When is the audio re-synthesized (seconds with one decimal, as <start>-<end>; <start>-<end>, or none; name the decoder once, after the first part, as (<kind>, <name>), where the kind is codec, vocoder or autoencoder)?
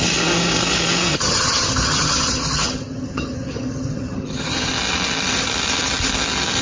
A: 1.1-4.7 (vocoder, HiFi-GAN)